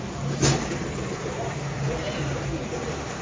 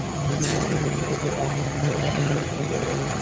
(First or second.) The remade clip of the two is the second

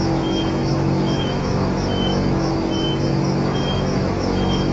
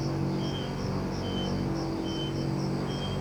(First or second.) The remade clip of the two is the first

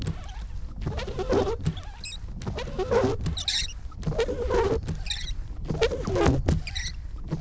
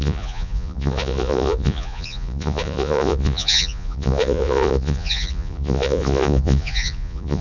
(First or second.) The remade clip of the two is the second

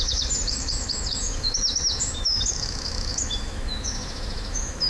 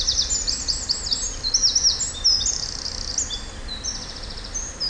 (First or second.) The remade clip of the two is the first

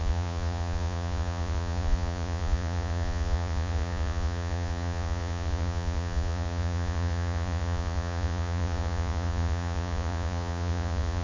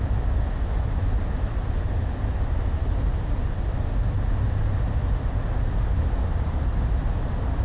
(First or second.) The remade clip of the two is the first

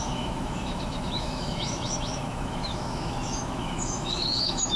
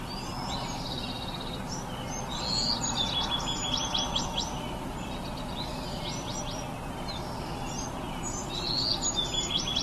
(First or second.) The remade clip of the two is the first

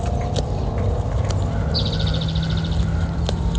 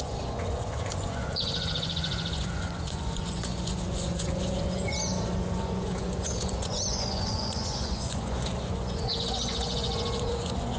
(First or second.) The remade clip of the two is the second